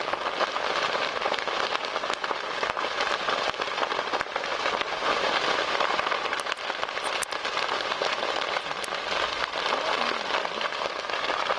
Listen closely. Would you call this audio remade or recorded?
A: recorded